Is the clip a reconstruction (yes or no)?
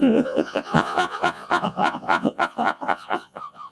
yes